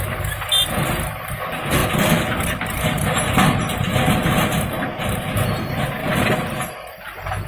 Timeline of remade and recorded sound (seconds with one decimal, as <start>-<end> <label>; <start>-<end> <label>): 0.0-7.5 recorded